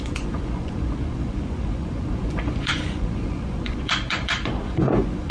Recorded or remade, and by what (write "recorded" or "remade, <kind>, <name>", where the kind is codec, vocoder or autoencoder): remade, vocoder, Vocos